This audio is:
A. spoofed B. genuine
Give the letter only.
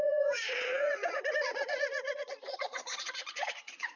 A